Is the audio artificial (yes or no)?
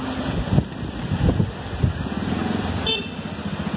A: no